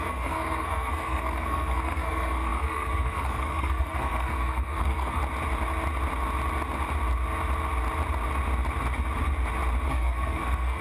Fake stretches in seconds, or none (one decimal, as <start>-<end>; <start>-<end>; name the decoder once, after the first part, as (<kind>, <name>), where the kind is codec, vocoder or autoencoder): 0.0-5.2 (codec, SNAC); 9.9-10.8